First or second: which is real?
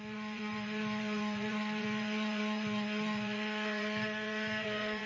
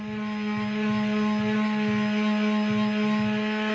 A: second